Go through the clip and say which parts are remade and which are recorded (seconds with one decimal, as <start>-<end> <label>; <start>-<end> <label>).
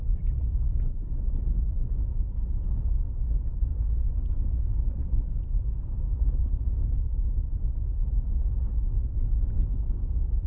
0.0-3.7 recorded; 3.7-5.4 remade; 5.4-10.5 recorded